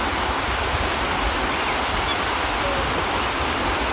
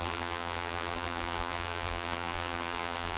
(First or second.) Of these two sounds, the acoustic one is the first